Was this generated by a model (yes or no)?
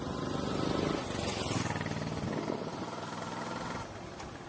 no